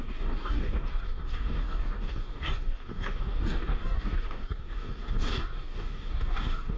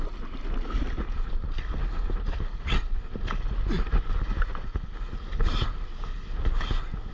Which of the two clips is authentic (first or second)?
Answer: second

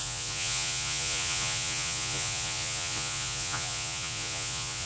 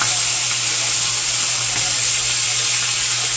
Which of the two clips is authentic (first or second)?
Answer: second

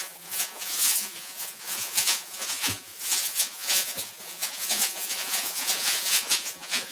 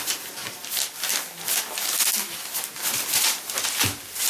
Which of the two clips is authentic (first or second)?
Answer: second